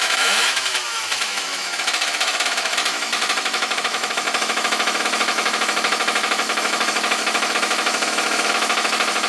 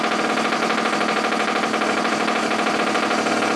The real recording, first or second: second